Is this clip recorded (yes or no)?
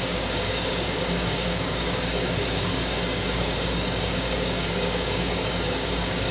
no